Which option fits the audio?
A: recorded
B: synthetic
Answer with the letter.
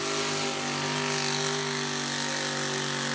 A